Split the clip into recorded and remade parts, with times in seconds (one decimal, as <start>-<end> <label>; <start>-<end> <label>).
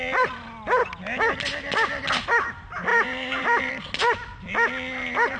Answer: 0.0-2.9 recorded; 2.9-3.7 remade; 3.7-5.4 recorded